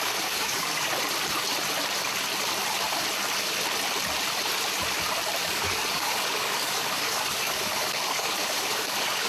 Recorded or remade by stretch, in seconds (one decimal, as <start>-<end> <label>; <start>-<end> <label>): 0.0-0.9 remade; 0.9-5.4 recorded; 5.4-9.3 remade